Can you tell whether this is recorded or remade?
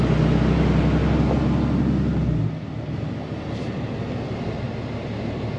recorded